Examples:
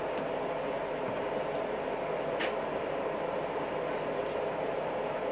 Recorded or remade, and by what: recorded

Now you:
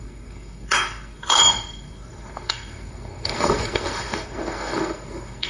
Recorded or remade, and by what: remade, codec, SNAC